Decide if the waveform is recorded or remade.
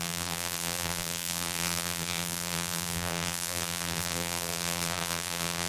remade